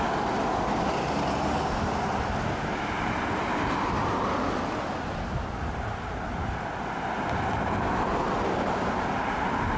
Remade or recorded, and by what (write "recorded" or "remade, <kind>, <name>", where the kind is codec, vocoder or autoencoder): recorded